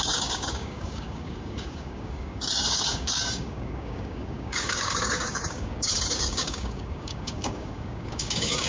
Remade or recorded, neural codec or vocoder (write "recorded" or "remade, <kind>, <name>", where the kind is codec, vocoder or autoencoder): remade, codec, DAC